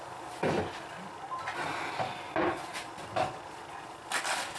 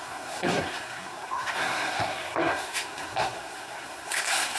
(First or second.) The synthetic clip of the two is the second